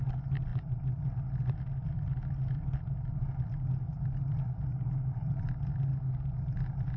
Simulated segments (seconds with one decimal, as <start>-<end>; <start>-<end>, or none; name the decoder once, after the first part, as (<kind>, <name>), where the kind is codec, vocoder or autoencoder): none